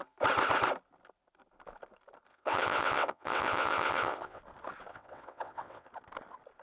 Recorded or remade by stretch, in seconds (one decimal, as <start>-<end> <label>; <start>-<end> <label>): 0.0-2.3 recorded; 2.3-4.4 remade; 4.4-4.9 recorded; 4.9-5.9 remade; 5.9-6.6 recorded